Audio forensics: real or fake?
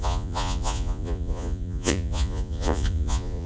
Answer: fake